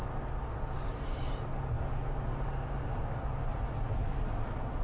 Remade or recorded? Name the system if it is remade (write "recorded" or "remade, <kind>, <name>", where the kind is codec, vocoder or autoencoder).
recorded